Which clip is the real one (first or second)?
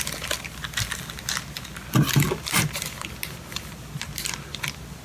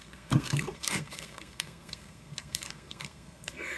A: first